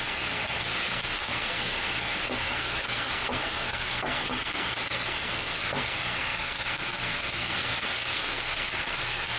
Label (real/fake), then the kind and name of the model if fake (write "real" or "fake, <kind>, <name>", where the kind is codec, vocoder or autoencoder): fake, codec, SNAC